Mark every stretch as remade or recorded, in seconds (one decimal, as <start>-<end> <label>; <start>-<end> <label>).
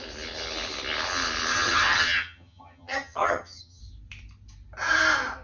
0.0-1.5 recorded; 1.5-3.8 remade; 3.8-5.4 recorded